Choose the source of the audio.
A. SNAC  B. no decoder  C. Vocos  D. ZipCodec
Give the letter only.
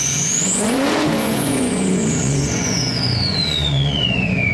C